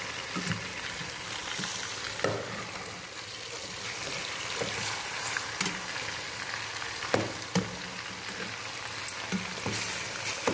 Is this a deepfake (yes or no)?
no